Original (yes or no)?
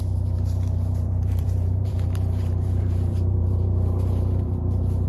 no